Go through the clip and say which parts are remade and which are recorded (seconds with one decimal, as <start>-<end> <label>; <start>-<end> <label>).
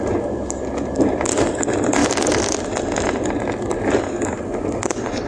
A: 0.0-5.3 recorded